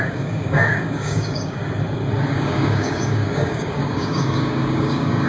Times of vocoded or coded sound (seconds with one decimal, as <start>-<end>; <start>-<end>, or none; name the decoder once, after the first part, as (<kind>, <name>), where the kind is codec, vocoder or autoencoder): 0.0-1.6 (codec, DAC); 2.3-5.3